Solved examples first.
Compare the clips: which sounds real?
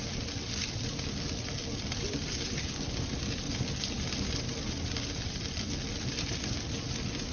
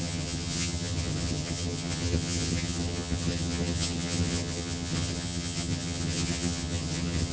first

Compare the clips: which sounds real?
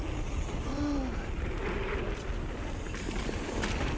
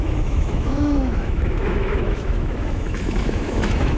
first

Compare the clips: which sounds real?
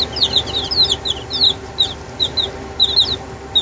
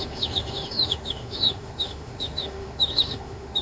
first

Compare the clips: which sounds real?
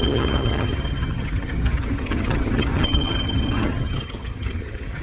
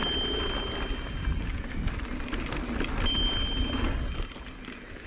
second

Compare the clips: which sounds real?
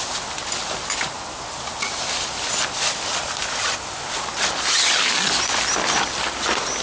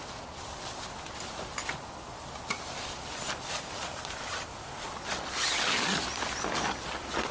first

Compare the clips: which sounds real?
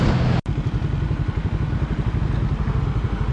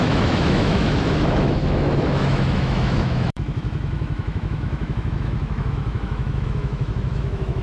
first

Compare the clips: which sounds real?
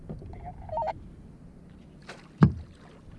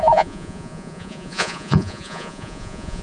first